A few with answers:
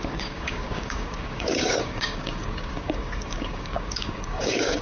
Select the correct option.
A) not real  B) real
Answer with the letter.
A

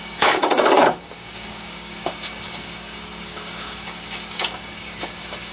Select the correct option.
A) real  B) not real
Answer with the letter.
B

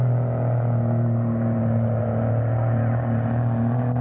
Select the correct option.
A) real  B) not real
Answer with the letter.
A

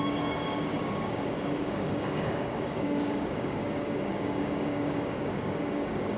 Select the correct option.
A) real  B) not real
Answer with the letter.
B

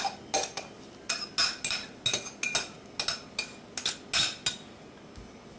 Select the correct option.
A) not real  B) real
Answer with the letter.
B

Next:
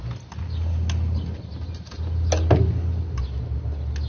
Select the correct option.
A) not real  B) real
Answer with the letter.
B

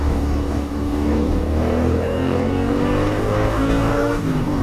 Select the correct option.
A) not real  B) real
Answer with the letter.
A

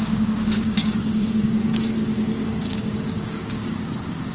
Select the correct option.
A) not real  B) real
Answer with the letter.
A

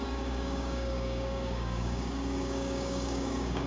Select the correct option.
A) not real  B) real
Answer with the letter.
A